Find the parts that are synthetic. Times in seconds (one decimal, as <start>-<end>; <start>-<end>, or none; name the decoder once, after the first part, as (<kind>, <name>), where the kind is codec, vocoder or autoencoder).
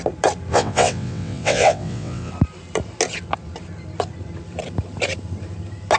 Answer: 0.5-2.3 (vocoder, WaveNeXt)